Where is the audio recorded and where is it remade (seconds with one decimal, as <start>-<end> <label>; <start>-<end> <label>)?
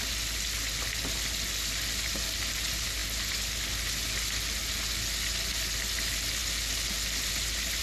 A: 0.0-7.8 recorded